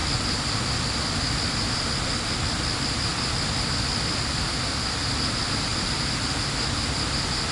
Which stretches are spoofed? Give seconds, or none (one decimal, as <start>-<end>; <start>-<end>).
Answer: none